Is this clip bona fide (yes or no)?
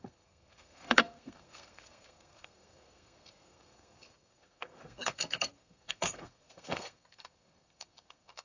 no